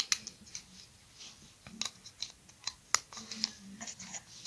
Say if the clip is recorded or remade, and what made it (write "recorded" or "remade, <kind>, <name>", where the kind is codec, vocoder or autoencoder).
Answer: recorded